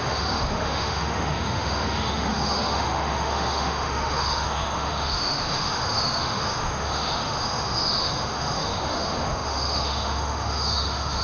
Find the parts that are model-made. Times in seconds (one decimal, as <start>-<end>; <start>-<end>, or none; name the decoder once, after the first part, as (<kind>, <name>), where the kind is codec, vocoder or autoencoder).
0.0-11.2 (autoencoder, DAC-VAE)